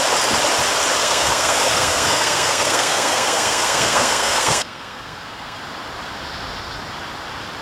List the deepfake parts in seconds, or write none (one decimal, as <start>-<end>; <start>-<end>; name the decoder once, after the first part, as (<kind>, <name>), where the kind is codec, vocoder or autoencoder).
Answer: 1.0-5.6 (codec, SNAC)